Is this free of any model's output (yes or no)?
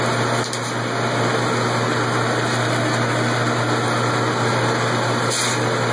yes